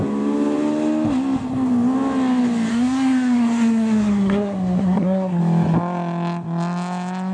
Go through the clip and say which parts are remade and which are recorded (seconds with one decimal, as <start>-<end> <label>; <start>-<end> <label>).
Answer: 0.0-2.7 recorded; 2.7-5.4 remade; 5.4-7.3 recorded

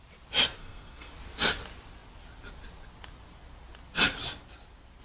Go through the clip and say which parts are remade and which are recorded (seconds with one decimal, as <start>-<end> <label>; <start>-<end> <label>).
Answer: 0.0-0.6 recorded; 0.6-1.1 remade; 1.1-5.0 recorded

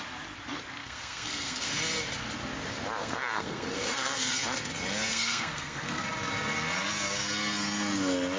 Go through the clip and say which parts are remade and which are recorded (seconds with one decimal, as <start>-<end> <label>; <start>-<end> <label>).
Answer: 0.0-0.8 recorded; 0.8-1.7 remade; 1.7-3.0 recorded; 3.0-4.4 remade; 4.4-5.1 recorded; 5.1-6.0 remade; 6.0-8.4 recorded

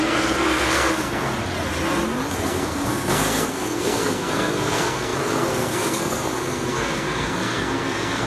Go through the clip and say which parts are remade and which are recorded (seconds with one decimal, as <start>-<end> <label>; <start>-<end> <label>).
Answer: 0.0-1.3 remade; 1.3-2.3 recorded; 2.3-8.3 remade

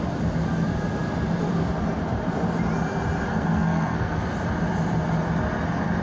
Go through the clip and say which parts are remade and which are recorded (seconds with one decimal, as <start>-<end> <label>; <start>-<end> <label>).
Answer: 0.0-3.3 recorded; 3.3-4.2 remade; 4.2-6.0 recorded

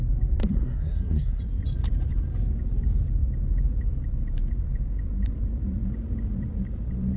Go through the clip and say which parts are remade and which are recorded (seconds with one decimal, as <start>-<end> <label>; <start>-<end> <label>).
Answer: 0.0-0.4 recorded; 0.4-1.4 remade; 1.4-7.2 recorded

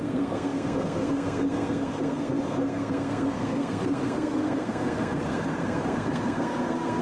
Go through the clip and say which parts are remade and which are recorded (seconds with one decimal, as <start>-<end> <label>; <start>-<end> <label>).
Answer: 0.0-7.0 remade

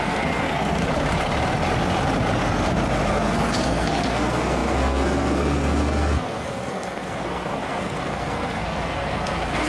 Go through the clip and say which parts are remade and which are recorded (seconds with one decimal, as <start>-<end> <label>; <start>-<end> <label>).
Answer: 0.0-0.8 remade; 0.8-3.1 recorded; 3.1-9.7 remade